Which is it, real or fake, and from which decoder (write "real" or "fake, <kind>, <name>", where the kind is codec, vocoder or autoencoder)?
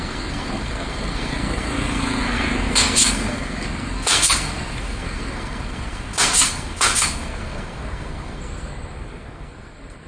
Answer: fake, codec, SNAC